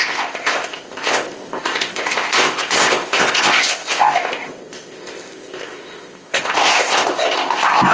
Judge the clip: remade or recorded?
remade